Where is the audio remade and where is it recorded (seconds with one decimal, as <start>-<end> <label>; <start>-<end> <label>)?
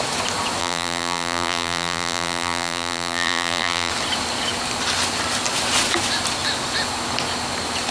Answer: 0.0-0.6 recorded; 0.6-3.9 remade; 3.9-7.9 recorded